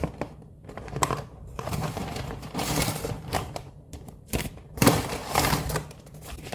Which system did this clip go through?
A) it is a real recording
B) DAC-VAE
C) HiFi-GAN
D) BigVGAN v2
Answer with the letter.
D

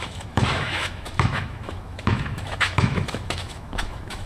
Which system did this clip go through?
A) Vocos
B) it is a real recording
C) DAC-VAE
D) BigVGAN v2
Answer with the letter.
C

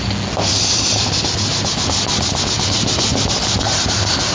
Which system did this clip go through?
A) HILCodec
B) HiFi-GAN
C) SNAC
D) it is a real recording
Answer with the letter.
D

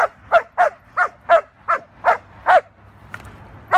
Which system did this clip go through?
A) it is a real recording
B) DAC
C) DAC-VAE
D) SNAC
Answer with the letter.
A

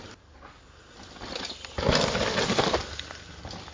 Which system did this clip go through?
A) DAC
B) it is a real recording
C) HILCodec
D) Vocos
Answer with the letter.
B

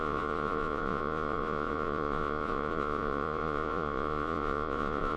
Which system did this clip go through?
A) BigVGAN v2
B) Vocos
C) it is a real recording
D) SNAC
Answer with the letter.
B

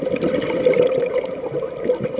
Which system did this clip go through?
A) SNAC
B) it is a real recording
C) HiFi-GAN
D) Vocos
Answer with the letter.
B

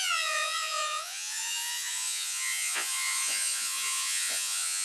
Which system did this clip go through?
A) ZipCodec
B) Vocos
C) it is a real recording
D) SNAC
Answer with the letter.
B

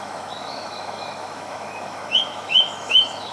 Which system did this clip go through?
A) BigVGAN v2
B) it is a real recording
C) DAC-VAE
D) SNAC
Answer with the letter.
C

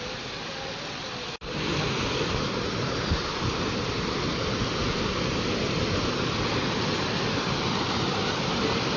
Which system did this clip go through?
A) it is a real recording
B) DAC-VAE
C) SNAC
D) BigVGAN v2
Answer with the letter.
A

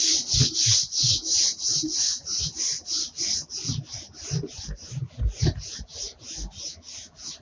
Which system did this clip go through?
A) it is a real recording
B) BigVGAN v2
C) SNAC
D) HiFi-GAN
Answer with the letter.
A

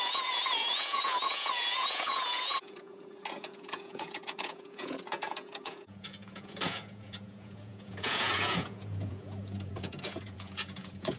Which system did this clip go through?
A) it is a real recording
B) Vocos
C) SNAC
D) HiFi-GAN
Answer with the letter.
B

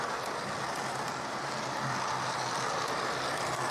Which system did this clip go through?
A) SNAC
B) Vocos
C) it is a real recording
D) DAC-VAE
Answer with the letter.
C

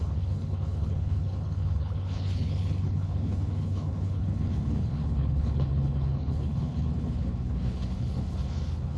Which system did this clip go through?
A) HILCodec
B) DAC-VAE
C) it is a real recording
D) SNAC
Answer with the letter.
A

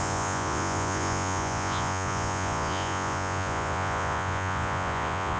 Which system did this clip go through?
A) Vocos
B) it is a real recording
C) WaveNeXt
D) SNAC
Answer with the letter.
A